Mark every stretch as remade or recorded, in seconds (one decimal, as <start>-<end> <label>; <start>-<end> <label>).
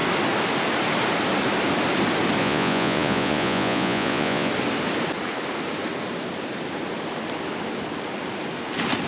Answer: 0.0-2.4 recorded; 2.4-4.5 remade; 4.5-9.1 recorded